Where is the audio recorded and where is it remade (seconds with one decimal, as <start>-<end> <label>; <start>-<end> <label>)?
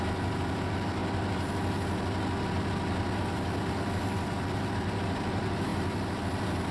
0.0-6.7 recorded